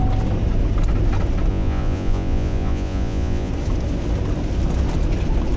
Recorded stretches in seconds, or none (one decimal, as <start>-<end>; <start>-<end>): 0.0-1.5; 3.5-5.6